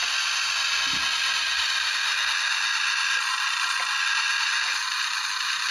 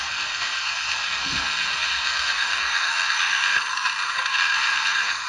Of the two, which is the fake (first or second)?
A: second